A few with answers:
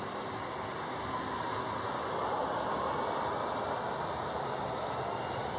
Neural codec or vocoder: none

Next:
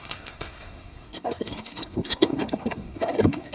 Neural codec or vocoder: codec, SNAC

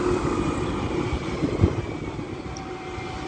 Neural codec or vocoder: none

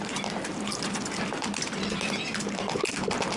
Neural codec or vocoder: none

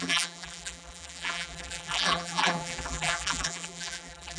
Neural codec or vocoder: vocoder, BigVGAN v2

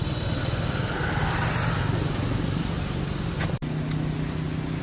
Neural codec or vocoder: none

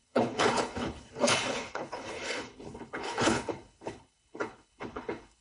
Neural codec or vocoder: codec, HILCodec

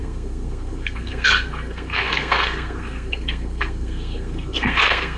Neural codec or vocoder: codec, SNAC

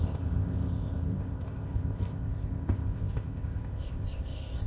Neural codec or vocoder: codec, ZipCodec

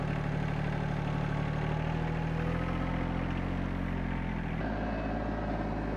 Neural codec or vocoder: none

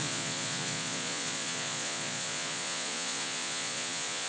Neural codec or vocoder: vocoder, Vocos